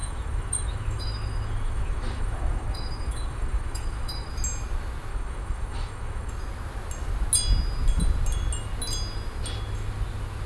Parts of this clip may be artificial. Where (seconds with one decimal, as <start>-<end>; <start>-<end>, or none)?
0.0-4.3; 5.1-6.3